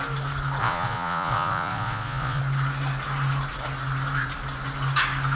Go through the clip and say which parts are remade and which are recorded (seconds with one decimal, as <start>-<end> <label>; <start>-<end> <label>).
0.0-0.6 recorded; 0.6-2.4 remade; 2.4-5.3 recorded